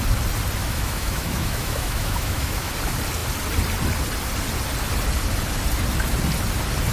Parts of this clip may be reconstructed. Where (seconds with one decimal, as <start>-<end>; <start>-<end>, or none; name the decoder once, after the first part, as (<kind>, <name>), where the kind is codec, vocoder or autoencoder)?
0.6-2.7 (autoencoder, DAC-VAE)